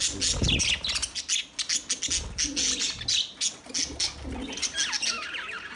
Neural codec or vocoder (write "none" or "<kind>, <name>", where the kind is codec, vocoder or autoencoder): none